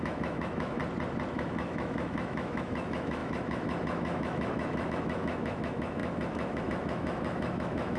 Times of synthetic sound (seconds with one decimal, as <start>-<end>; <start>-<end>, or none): 0.0-0.8; 1.3-8.0